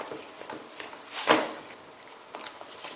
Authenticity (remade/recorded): recorded